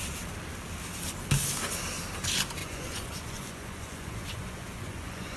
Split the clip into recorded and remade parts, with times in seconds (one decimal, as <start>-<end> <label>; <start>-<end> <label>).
0.0-2.6 recorded; 2.6-5.4 remade